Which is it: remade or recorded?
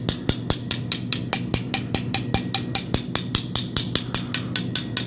recorded